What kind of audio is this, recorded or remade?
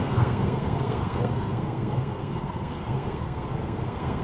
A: remade